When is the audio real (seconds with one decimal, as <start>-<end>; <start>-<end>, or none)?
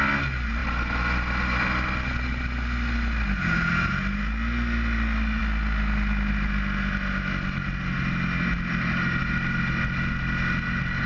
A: 0.0-11.1